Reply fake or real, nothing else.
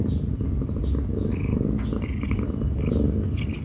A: real